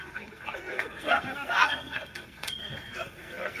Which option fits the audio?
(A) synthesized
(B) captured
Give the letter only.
A